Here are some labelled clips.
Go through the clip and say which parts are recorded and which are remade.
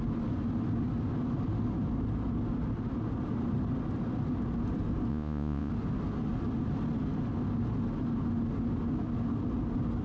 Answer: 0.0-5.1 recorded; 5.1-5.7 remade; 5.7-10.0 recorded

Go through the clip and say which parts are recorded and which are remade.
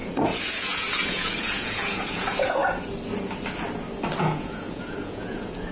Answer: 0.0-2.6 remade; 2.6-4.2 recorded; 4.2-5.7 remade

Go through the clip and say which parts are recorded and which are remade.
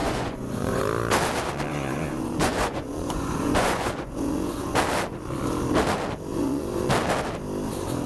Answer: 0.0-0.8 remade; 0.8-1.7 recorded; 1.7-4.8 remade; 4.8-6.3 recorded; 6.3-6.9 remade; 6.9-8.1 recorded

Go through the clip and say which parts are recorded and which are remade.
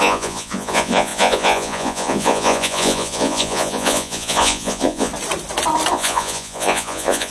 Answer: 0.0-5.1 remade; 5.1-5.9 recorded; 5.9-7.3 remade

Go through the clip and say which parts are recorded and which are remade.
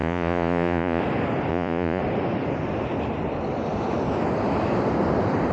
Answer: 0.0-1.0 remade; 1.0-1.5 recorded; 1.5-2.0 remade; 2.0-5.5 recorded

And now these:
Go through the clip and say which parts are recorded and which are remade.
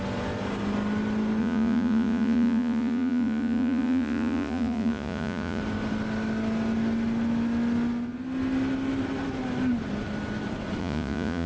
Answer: 0.0-1.4 recorded; 1.4-5.6 remade; 5.6-10.8 recorded; 10.8-11.5 remade